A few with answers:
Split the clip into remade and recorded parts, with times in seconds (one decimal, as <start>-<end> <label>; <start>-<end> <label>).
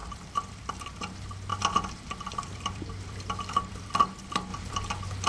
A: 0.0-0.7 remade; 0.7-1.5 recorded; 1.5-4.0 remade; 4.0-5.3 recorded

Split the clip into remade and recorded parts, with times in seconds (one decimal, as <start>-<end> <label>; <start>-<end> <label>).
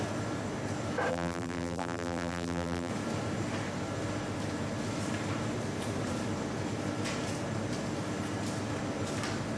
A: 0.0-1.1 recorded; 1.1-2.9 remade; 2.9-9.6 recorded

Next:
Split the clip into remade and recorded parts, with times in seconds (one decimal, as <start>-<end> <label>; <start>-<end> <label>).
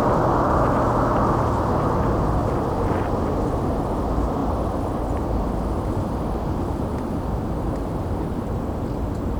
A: 0.0-2.4 recorded; 2.4-2.9 remade; 2.9-9.4 recorded